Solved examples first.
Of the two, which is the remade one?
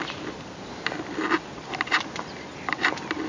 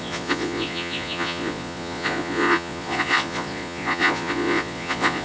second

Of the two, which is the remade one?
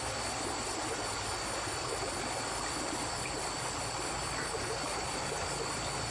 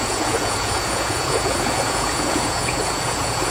second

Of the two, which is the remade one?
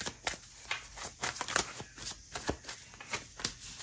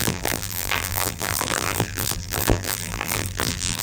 second